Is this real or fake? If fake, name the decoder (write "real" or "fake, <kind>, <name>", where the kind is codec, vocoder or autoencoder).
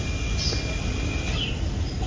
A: real